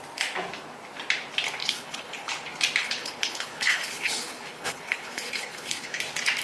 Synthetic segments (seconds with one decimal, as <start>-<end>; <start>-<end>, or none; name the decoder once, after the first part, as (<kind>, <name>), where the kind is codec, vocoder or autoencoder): 1.6-2.3 (codec, HILCodec); 2.8-6.0